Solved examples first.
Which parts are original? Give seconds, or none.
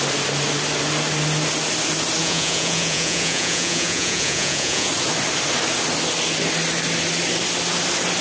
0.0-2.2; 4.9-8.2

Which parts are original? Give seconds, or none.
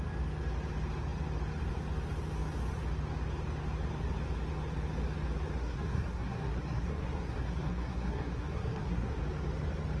0.0-5.6; 9.2-10.0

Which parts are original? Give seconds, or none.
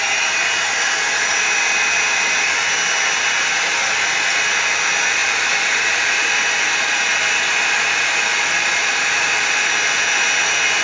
0.0-10.8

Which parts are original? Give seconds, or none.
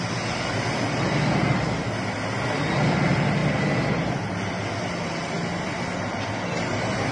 0.0-7.1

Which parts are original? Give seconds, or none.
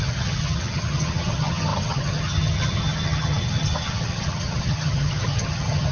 none